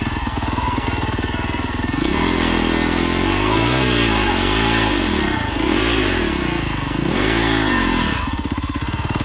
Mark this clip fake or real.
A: fake